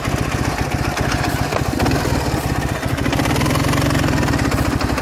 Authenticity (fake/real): real